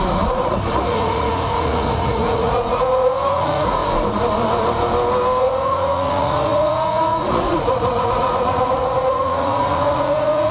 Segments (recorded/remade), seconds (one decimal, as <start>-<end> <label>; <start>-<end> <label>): 0.0-3.8 remade; 3.8-5.4 recorded; 5.4-10.5 remade